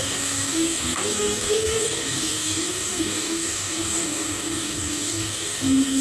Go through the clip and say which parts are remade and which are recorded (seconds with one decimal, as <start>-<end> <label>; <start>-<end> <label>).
0.0-6.0 remade